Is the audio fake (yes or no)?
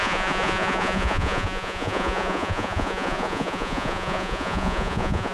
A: yes